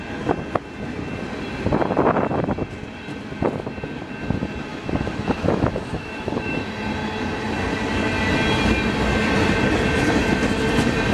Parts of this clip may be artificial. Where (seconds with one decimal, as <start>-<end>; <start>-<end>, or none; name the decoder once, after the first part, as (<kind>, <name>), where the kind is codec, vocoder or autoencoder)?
4.7-6.7 (autoencoder, DAC-VAE)